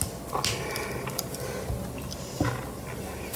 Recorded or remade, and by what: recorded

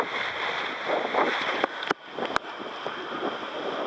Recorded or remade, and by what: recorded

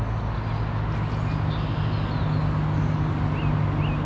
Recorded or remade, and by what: recorded